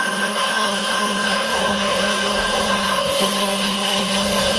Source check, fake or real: fake